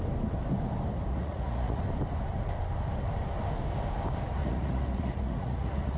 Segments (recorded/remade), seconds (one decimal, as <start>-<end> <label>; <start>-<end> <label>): 0.0-1.1 recorded; 1.1-1.8 remade; 1.8-4.4 recorded; 4.4-6.0 remade